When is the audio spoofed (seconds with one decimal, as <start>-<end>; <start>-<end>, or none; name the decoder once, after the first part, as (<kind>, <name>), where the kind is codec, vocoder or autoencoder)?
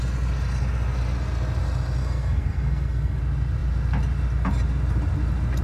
2.0-3.2 (codec, SNAC)